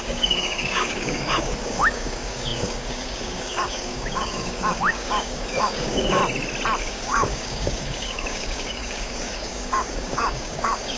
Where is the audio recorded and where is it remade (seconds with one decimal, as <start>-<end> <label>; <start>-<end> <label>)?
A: 0.0-6.2 remade; 6.2-6.8 recorded; 6.8-11.0 remade